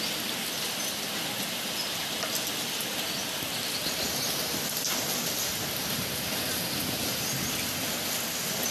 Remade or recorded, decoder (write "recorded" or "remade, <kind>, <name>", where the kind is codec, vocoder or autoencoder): recorded